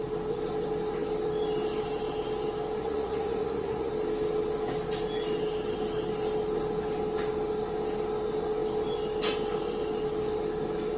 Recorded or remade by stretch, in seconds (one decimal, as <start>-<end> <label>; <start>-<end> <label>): 0.0-2.8 recorded; 2.8-3.9 remade; 3.9-11.0 recorded